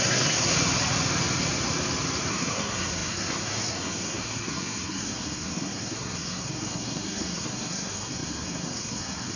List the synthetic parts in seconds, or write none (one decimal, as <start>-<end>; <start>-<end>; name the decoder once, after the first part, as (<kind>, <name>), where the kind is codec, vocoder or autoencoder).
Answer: 0.0-0.5 (codec, SNAC); 2.3-9.4